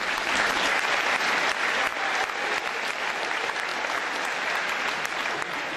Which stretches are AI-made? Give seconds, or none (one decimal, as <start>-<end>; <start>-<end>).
none